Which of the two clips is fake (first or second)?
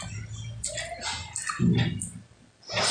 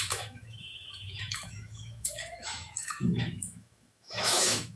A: second